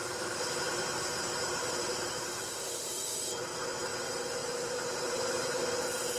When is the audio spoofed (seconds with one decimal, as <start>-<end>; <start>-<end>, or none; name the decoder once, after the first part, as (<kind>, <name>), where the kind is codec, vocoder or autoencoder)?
4.4-5.6 (vocoder, BigVGAN v2)